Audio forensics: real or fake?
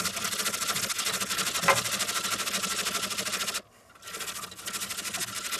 real